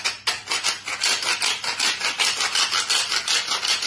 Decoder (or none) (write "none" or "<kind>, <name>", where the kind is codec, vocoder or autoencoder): none